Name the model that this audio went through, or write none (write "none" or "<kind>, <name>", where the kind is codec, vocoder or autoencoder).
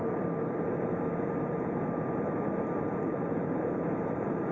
vocoder, BigVGAN v2